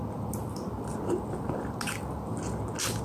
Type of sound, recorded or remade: recorded